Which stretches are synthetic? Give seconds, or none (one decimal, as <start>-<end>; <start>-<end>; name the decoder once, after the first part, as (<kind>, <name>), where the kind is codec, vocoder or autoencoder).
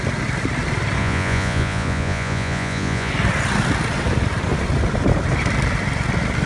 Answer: 1.0-3.1 (vocoder, Vocos)